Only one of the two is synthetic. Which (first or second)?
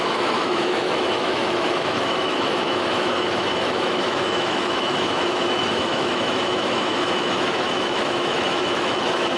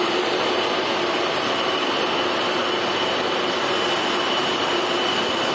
first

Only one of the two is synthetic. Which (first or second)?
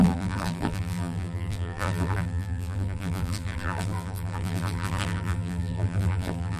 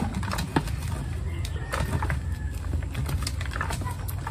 first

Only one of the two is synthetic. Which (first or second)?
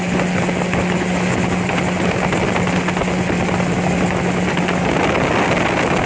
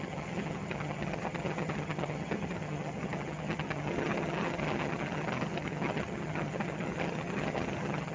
second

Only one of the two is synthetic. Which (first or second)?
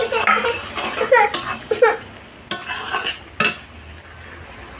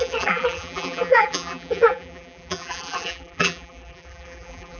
second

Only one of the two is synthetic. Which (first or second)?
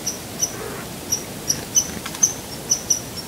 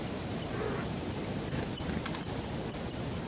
second